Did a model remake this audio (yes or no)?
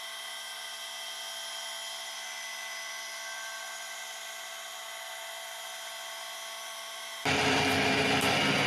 no